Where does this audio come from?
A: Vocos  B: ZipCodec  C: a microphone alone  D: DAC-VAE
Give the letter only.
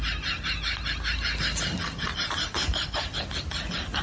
C